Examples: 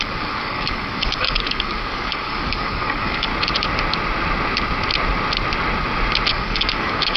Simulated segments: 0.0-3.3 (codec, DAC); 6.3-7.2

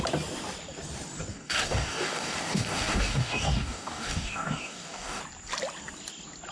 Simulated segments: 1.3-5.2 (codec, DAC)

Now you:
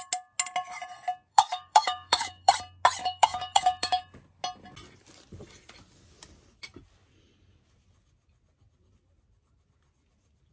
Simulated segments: 1.3-2.5 (codec, DAC); 3.0-4.0

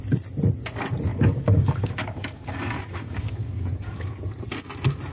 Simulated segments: 1.1-4.2 (codec, DAC)